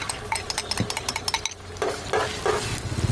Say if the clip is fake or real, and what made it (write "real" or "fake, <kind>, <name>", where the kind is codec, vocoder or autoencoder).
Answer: real